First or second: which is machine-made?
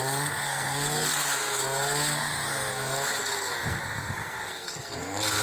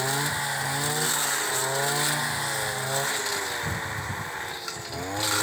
first